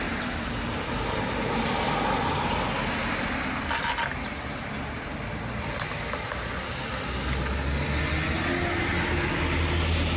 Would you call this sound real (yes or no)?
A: yes